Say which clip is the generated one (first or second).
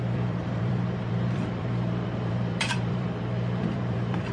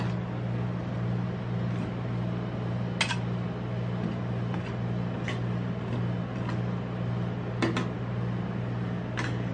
first